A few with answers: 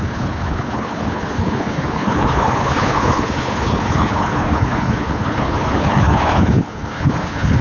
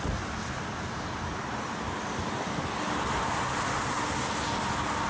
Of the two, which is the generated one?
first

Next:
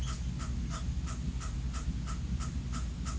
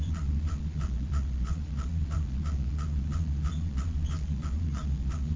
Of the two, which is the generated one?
second